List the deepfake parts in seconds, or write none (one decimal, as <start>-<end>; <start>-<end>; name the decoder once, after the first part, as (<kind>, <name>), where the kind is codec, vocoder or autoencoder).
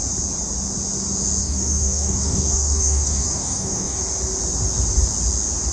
1.4-4.0 (codec, DAC)